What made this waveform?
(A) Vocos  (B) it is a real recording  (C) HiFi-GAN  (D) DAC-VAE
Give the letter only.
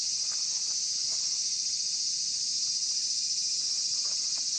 B